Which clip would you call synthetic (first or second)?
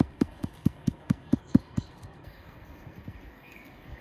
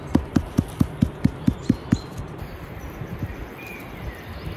first